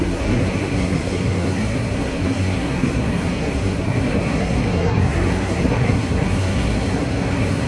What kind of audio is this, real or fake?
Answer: fake